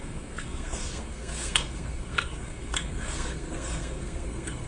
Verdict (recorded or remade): remade